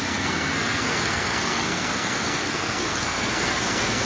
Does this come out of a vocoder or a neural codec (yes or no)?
yes